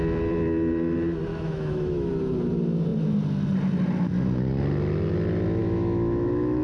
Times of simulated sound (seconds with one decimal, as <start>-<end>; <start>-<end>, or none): 1.3-2.1; 5.6-6.6